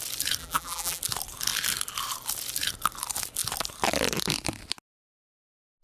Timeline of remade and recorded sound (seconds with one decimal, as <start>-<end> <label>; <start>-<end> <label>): 0.0-0.4 recorded; 0.4-1.0 remade; 1.0-5.8 recorded